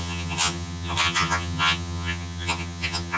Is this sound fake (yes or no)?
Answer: yes